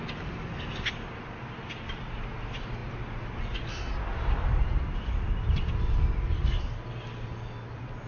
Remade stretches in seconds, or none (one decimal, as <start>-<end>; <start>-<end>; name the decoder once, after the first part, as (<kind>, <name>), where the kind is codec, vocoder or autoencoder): none